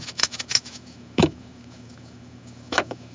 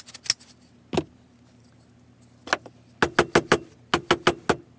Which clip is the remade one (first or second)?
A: first